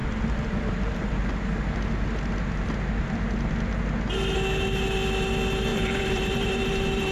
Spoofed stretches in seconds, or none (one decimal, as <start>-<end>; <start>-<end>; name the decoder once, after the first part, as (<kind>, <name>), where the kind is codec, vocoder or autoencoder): 0.0-1.2 (vocoder, BigVGAN v2); 5.7-7.1